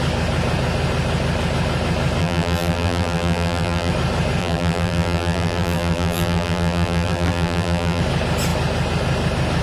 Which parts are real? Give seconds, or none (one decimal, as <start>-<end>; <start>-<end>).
0.0-2.2; 3.9-4.4; 8.0-9.6